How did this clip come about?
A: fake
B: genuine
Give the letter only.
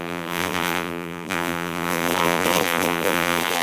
A